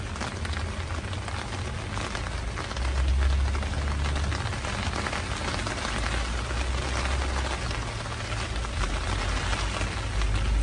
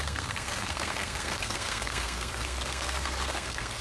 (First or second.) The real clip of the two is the first